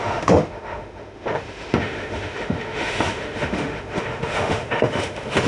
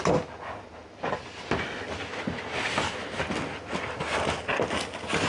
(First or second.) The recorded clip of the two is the second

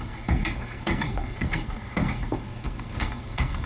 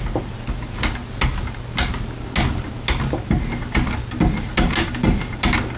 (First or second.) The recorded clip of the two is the second